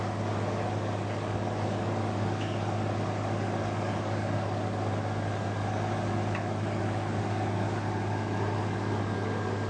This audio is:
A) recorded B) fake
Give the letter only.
B